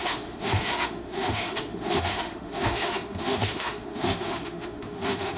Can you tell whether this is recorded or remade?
remade